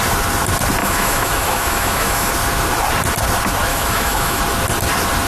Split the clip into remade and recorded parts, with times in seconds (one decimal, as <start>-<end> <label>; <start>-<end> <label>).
0.0-0.8 recorded; 0.8-2.3 remade; 2.3-3.7 recorded; 3.7-4.4 remade; 4.4-5.3 recorded